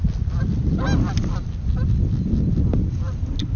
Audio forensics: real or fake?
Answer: real